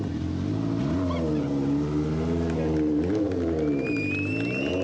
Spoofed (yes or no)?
no